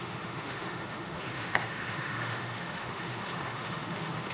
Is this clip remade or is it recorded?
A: remade